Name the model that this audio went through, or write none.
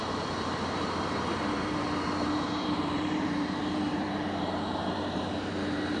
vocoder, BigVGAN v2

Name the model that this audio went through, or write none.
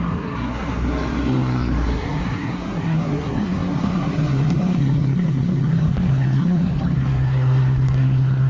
codec, SNAC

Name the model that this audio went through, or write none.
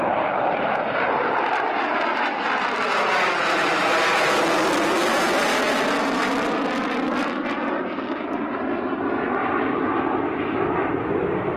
none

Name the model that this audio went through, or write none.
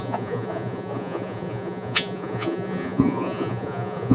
vocoder, Vocos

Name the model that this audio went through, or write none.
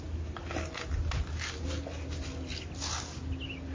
none